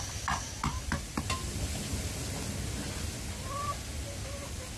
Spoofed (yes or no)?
no